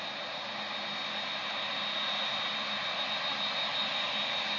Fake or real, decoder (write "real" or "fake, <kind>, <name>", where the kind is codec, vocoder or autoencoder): real